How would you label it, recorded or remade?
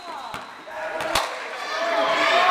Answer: recorded